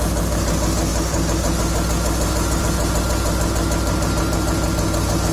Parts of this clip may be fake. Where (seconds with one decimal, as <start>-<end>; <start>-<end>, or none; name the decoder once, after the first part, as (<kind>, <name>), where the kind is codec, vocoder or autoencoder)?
none